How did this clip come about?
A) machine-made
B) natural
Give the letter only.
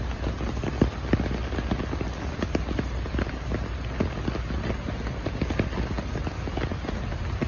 B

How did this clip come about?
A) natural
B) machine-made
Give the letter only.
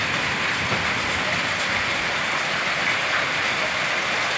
A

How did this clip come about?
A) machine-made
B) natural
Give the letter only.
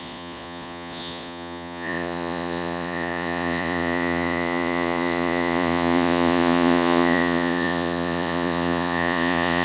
A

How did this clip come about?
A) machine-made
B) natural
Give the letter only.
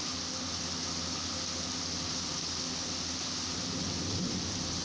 B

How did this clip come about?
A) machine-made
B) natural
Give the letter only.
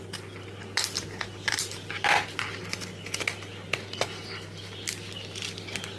B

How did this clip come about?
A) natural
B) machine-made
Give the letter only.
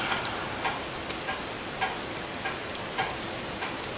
A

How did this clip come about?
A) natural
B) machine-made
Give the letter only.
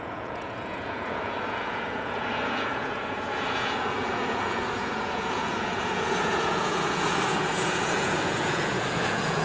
B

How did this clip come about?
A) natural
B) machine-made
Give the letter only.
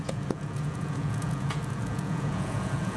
B